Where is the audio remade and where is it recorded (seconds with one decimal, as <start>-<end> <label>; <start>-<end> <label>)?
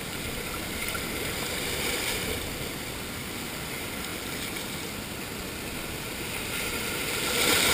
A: 0.0-0.8 recorded; 0.8-2.9 remade; 2.9-7.7 recorded